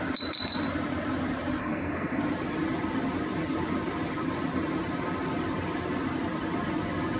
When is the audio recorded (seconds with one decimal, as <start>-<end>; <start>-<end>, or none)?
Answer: 0.0-1.6; 2.2-7.2